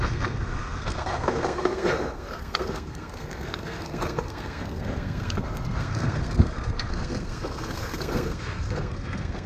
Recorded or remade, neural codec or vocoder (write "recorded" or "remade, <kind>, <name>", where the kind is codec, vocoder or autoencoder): remade, codec, SNAC